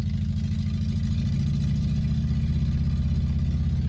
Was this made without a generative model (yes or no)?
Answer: yes